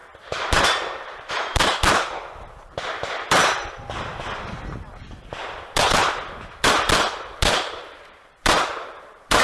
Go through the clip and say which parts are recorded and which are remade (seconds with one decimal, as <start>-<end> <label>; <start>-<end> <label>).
0.0-1.3 remade; 1.3-7.3 recorded; 7.3-9.4 remade